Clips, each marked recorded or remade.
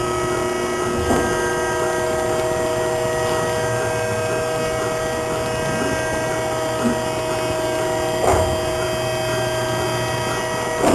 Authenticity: recorded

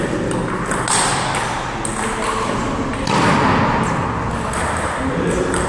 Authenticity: recorded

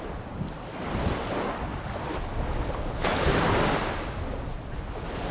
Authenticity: recorded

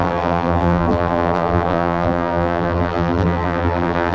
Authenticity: remade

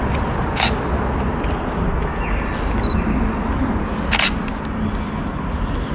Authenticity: recorded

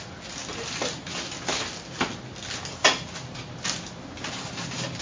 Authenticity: recorded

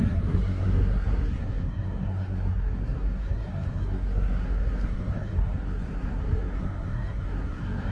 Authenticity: remade